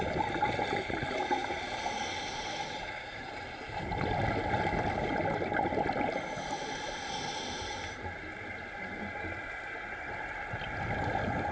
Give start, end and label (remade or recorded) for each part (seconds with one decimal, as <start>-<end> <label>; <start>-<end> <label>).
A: 0.0-11.5 recorded